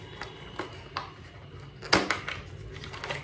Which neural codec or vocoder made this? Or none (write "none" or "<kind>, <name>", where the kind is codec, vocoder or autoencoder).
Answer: none